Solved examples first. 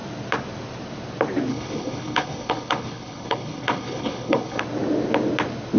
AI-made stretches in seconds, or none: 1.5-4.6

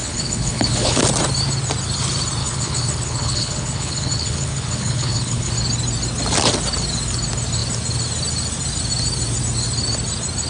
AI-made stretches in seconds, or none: 0.0-1.0; 2.4-5.5

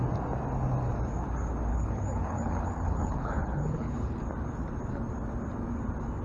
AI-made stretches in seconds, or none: 1.7-4.2

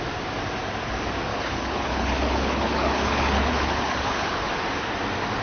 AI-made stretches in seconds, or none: 1.3-4.5

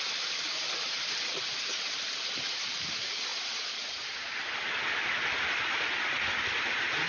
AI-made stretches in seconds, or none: none

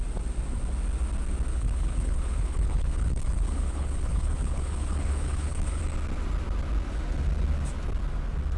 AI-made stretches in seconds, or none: 1.5-5.8

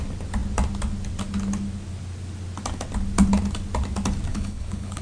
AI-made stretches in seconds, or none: 4.3-5.0